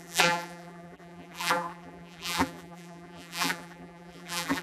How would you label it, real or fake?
fake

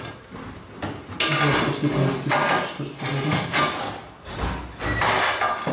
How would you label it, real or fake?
real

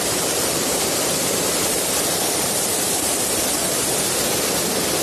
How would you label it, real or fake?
fake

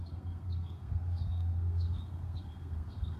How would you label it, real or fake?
fake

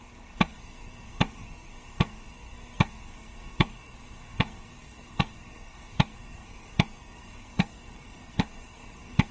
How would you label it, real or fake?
fake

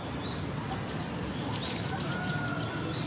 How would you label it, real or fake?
real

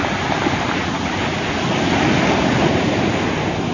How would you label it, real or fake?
real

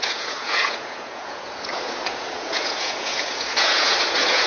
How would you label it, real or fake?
fake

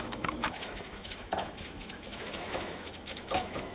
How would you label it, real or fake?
fake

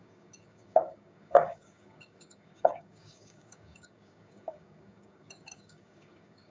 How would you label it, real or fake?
fake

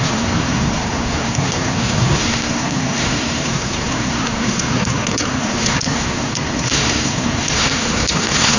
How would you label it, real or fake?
fake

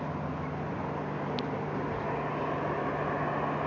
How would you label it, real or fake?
real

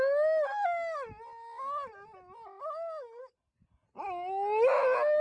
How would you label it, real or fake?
real